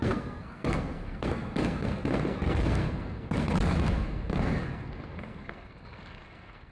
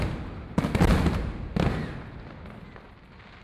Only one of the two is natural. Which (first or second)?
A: second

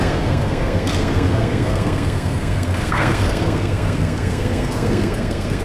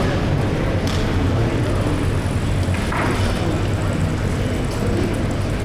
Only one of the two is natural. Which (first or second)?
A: second